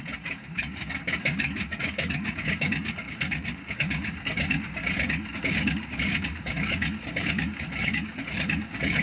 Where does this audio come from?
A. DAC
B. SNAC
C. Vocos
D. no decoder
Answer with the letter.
A